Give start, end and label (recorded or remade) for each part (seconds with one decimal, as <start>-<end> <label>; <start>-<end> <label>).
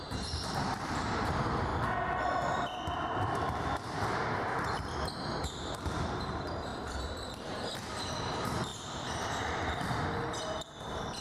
0.0-1.7 remade; 1.7-5.4 recorded; 5.4-6.7 remade; 6.7-7.4 recorded; 7.4-8.7 remade; 8.7-11.2 recorded